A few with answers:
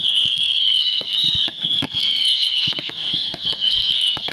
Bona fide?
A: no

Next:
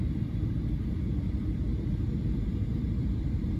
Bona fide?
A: no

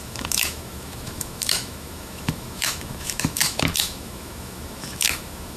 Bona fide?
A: no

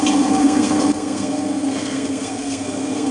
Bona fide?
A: no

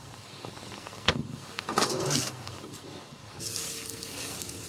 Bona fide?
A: no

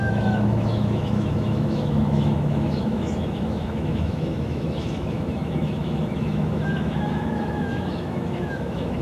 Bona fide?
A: no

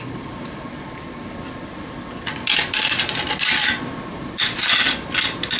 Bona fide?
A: yes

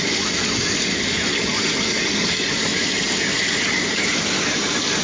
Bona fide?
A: yes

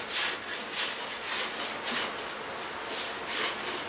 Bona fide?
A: yes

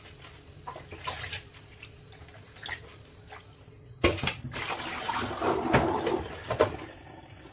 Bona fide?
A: yes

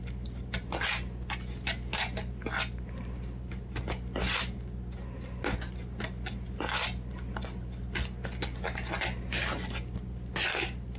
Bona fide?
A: yes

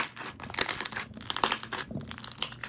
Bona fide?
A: yes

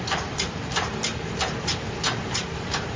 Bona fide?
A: no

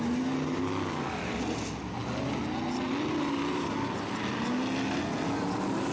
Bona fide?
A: yes